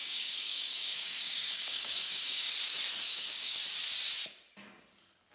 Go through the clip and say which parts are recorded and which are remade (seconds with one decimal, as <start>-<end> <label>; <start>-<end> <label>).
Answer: 0.0-2.5 remade; 2.5-3.1 recorded; 3.1-3.6 remade; 3.6-5.3 recorded